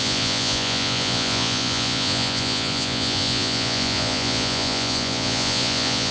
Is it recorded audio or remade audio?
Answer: remade